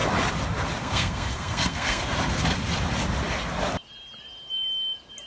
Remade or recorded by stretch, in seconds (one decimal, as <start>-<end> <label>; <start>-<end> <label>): 0.0-0.8 recorded; 0.8-2.0 remade; 2.0-5.3 recorded